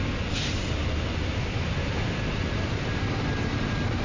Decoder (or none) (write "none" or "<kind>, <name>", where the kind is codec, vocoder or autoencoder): none